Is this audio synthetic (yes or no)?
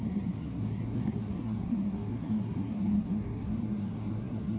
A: yes